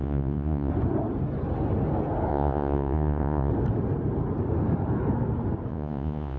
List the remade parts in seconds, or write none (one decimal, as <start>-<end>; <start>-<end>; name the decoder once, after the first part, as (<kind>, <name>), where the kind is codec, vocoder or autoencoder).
0.0-0.7 (vocoder, Vocos); 2.3-3.5; 5.7-6.4